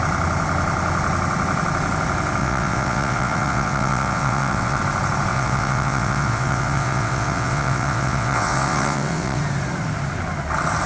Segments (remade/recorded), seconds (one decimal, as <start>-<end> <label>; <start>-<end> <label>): 0.0-2.4 recorded; 2.4-4.8 remade; 4.8-5.3 recorded; 5.3-9.4 remade; 9.4-10.9 recorded

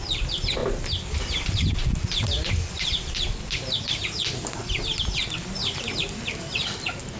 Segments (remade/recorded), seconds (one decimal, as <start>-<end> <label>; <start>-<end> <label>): 0.0-0.6 remade; 0.6-1.1 recorded; 1.1-1.8 remade; 1.8-6.0 recorded; 6.0-7.2 remade

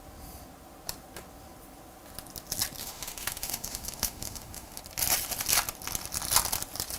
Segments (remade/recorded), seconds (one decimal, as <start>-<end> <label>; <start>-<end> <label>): 0.0-2.8 recorded; 2.8-4.8 remade; 4.8-7.0 recorded

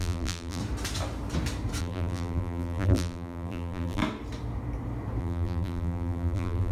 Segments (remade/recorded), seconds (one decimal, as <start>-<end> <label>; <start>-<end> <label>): 0.0-0.6 remade; 0.6-1.8 recorded; 1.8-4.0 remade; 4.0-5.2 recorded; 5.2-6.7 remade

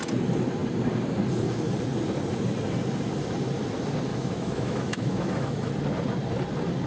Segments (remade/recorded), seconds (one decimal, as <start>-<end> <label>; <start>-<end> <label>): 0.0-4.1 recorded; 4.1-5.7 remade; 5.7-6.9 recorded